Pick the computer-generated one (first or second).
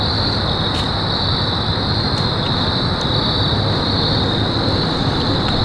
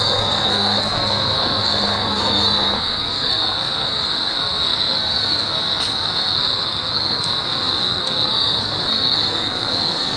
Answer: second